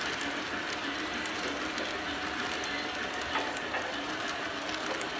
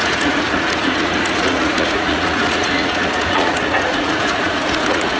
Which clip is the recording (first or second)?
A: first